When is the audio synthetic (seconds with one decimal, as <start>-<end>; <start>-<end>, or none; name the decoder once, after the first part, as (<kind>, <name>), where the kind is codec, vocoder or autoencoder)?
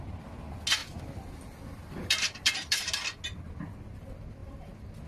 0.8-2.9 (vocoder, BigVGAN v2); 4.4-5.1